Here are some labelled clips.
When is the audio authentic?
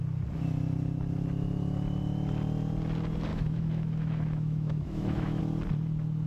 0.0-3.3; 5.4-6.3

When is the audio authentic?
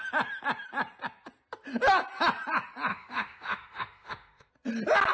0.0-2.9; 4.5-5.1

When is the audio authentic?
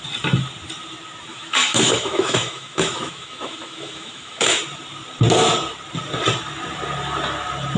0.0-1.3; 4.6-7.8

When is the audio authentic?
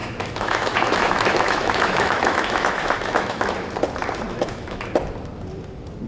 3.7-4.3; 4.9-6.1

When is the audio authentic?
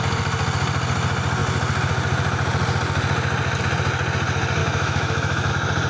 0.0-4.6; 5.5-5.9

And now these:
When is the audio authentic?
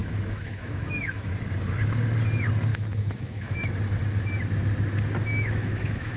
1.3-2.7; 3.7-5.3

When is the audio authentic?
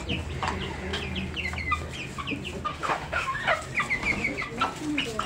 0.0-2.7; 3.4-5.3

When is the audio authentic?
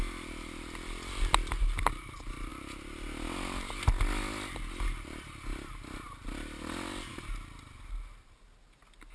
0.0-9.1